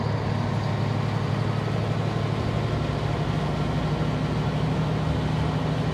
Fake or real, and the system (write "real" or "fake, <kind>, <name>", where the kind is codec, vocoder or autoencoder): real